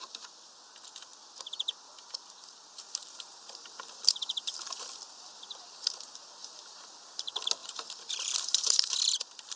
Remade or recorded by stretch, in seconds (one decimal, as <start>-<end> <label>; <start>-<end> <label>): 0.0-3.0 recorded; 3.0-4.5 remade; 4.5-7.6 recorded; 7.6-9.6 remade